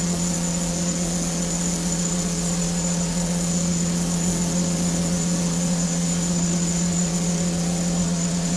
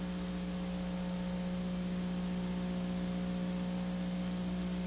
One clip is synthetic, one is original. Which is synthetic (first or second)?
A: first